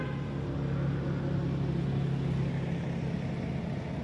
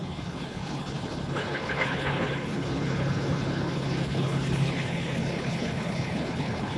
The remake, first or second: second